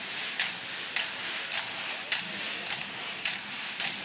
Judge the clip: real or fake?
real